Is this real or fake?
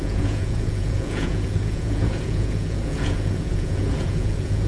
fake